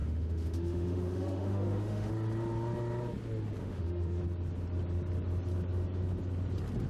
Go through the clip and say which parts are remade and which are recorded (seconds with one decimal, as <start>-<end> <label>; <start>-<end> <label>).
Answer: 0.0-2.1 remade; 2.1-3.6 recorded; 3.6-4.2 remade; 4.2-6.9 recorded